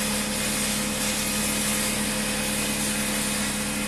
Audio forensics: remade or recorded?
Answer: recorded